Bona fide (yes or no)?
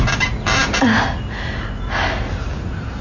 yes